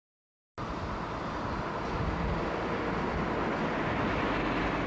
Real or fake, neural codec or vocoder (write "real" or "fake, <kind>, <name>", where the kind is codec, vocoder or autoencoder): real